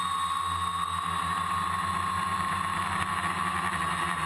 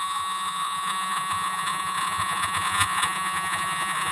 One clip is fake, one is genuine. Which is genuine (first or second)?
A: first